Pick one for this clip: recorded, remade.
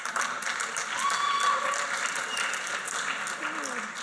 recorded